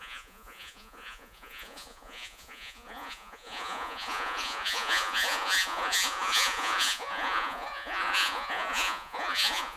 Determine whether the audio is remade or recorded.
remade